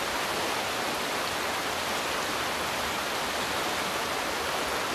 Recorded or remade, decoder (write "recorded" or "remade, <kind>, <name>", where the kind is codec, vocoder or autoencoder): recorded